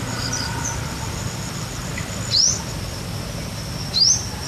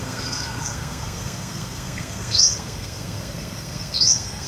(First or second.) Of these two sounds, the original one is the first